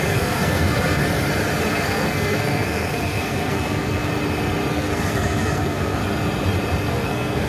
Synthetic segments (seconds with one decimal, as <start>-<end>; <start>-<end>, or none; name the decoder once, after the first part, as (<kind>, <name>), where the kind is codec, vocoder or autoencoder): 0.0-1.0 (codec, SNAC); 1.7-4.1; 4.7-6.0; 6.9-7.5